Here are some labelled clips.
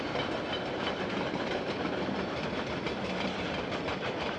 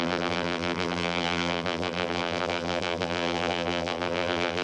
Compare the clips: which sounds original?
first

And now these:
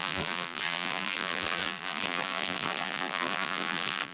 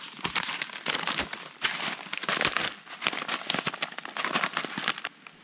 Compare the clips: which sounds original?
second